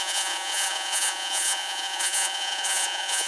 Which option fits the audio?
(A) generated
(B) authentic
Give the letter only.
A